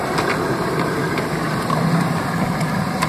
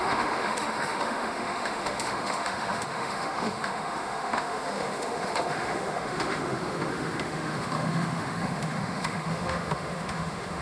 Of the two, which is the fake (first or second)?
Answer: second